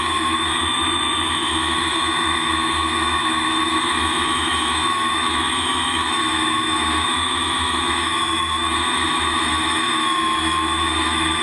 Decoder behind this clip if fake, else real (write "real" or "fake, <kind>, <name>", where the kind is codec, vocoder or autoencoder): fake, autoencoder, DAC-VAE